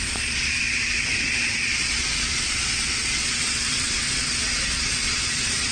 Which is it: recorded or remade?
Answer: remade